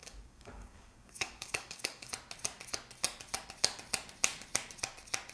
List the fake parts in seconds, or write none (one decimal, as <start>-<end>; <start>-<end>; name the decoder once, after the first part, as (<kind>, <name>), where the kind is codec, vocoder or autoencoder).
0.0-2.1 (codec, DAC)

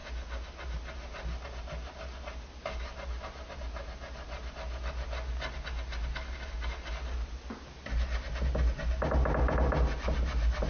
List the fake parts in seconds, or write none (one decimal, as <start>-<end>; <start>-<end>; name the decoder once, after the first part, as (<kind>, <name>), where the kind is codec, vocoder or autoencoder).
none